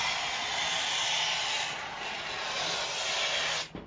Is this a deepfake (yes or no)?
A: no